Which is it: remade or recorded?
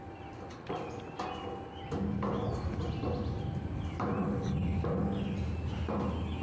recorded